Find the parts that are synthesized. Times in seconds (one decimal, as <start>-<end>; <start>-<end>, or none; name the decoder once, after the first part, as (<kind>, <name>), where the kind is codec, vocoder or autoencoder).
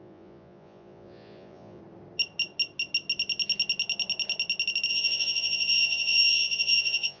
0.0-1.8 (vocoder, Vocos); 4.9-7.2